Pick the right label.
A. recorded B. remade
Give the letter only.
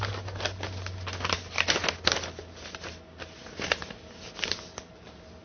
A